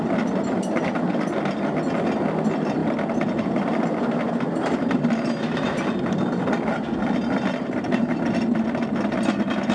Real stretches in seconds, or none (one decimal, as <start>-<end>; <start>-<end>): 0.0-9.7